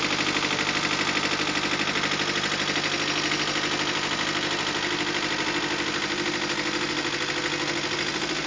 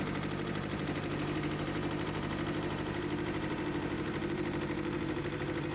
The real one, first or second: first